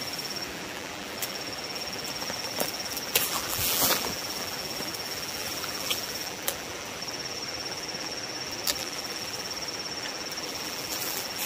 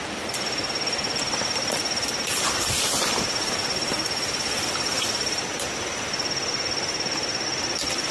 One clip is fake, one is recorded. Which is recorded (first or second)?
second